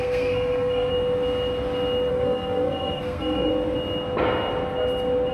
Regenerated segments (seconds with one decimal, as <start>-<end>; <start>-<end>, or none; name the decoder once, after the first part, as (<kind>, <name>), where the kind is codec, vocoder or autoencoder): 0.0-0.9 (codec, SNAC); 2.1-3.5